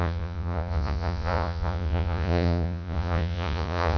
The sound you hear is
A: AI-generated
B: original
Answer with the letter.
A